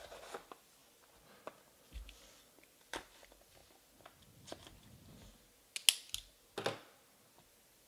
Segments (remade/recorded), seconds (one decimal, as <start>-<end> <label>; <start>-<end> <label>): 0.0-0.8 remade; 0.8-1.7 recorded; 1.7-3.6 remade; 3.6-7.5 recorded; 7.5-7.9 remade